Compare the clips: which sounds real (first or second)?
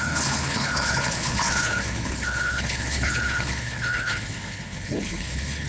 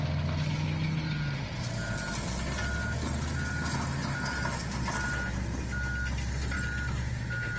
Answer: second